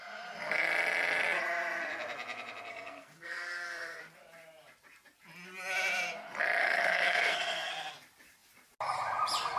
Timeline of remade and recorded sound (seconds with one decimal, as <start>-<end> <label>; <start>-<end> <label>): 0.0-2.7 recorded; 2.7-4.0 remade; 4.0-6.6 recorded; 6.6-7.7 remade; 7.7-9.6 recorded